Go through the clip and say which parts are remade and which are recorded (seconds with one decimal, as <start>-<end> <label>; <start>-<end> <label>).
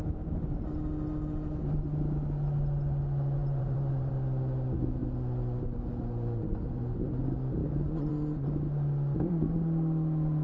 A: 0.0-3.4 recorded; 3.4-4.1 remade; 4.1-10.4 recorded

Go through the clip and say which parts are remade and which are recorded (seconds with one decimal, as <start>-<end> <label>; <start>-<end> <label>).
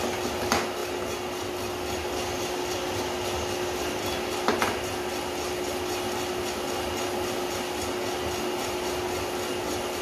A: 0.0-10.0 recorded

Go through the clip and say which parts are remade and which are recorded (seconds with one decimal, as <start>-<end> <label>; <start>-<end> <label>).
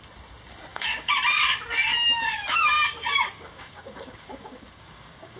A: 0.0-0.7 recorded; 0.7-1.2 remade; 1.2-2.2 recorded; 2.2-5.4 remade